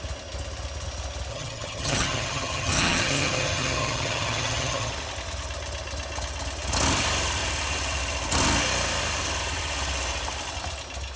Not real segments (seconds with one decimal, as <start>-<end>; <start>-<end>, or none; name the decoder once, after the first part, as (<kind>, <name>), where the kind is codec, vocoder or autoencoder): 1.3-4.9 (vocoder, HiFi-GAN)

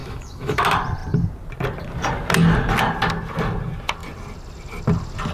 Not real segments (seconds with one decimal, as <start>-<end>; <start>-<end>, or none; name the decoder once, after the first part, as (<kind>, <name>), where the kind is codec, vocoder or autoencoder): 0.0-0.6 (autoencoder, DAC-VAE)

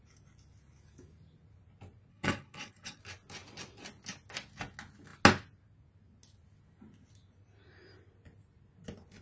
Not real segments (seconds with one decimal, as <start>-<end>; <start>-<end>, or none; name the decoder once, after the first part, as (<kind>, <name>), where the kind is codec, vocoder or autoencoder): 2.1-3.0 (codec, HILCodec)

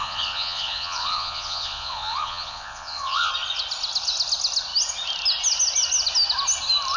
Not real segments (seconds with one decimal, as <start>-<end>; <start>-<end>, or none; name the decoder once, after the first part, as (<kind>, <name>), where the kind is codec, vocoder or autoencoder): 0.0-3.3 (vocoder, Vocos)

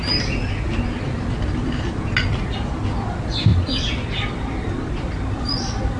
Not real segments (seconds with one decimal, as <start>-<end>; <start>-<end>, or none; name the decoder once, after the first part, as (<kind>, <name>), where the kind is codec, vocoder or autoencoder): none

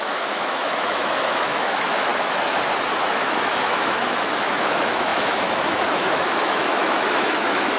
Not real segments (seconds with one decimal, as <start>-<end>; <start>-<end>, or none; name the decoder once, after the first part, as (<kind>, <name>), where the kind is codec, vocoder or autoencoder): 0.0-2.1 (autoencoder, DAC-VAE); 3.1-7.8

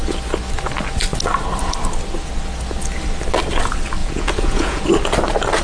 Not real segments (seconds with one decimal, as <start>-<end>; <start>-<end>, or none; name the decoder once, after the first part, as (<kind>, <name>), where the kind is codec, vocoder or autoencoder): 4.0-4.8 (vocoder, Vocos)

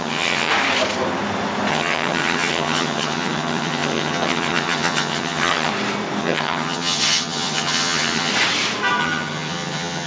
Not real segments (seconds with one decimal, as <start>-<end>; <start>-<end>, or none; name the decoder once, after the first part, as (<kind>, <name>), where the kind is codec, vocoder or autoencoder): 0.0-0.5 (vocoder, HiFi-GAN); 1.7-5.7; 6.2-8.3; 9.0-10.1